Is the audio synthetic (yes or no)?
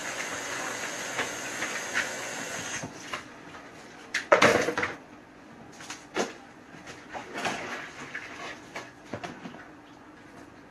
yes